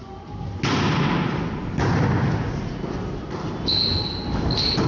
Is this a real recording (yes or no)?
yes